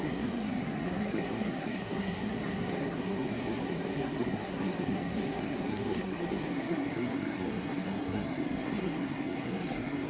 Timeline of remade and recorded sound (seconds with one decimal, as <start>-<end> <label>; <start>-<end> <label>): 0.0-10.1 remade